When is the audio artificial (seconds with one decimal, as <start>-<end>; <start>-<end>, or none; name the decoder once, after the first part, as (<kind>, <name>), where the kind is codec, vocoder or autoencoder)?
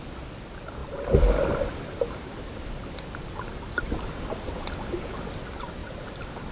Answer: none